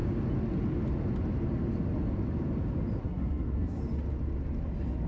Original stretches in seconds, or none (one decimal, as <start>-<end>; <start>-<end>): 0.0-3.0; 3.8-5.1

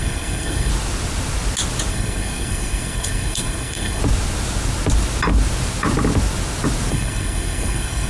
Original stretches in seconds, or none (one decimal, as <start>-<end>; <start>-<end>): 0.7-1.9; 4.0-6.9

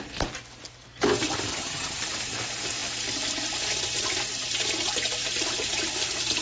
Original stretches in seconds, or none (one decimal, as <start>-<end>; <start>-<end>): 0.0-1.5; 2.0-6.4

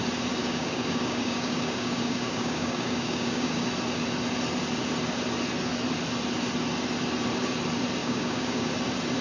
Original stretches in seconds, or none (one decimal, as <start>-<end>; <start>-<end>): 0.0-0.4; 3.6-8.0; 8.7-9.2

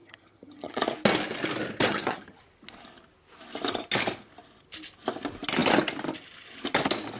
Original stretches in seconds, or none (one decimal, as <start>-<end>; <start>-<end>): 0.8-1.9; 2.4-7.2

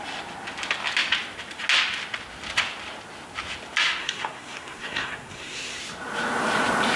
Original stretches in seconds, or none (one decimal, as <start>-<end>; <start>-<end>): 0.0-4.0; 5.8-7.0